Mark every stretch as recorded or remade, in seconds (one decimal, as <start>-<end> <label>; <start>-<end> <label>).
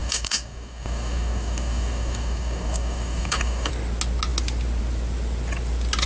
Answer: 0.0-3.7 remade; 3.7-6.1 recorded